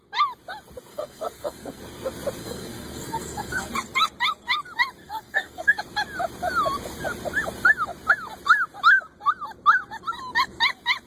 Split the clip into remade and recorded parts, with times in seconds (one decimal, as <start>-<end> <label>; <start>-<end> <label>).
0.0-0.9 recorded; 0.9-1.8 remade; 1.8-2.4 recorded; 2.4-3.7 remade; 3.7-5.0 recorded; 5.0-5.8 remade; 5.8-11.1 recorded